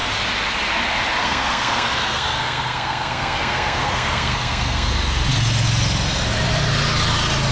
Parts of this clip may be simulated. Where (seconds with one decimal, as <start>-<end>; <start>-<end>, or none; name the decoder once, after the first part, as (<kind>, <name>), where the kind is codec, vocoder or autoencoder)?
1.2-4.9 (codec, SNAC)